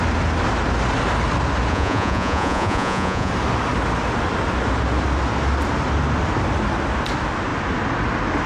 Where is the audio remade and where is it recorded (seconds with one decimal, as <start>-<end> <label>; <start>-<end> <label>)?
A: 0.0-1.7 recorded; 1.7-3.3 remade; 3.3-8.5 recorded